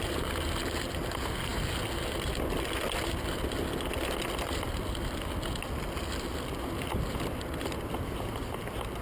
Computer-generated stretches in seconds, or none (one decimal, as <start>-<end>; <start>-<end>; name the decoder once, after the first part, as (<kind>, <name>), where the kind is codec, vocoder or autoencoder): none